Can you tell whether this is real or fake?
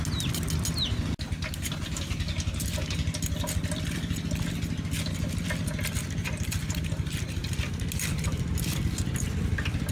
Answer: real